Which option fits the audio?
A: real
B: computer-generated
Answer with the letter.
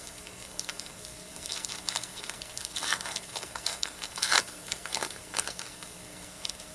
B